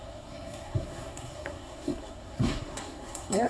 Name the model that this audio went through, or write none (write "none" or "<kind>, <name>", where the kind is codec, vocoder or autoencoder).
codec, SNAC